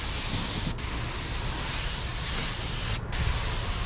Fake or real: real